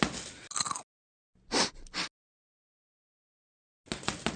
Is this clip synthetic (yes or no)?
no